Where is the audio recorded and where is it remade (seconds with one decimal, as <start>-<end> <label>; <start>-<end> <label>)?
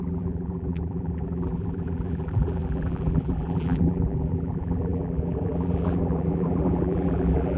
0.0-7.6 remade